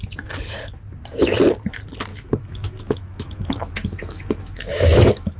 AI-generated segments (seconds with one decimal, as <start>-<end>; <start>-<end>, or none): 2.1-5.4